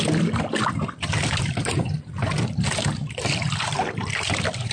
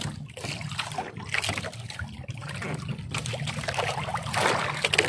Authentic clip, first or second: second